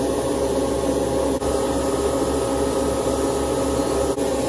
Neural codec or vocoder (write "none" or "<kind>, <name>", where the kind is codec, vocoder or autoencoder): none